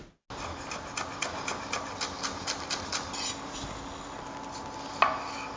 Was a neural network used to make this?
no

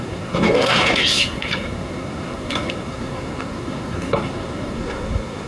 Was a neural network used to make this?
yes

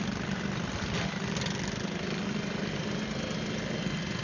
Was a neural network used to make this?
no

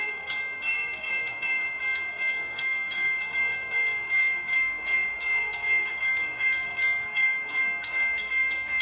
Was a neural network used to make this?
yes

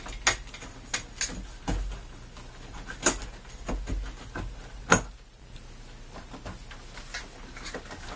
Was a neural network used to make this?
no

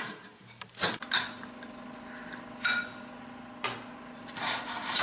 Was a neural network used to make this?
no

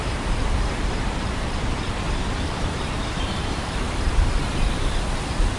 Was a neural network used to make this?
yes